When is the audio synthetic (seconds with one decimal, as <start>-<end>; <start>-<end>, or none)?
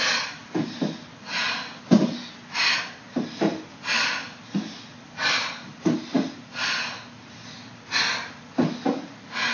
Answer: none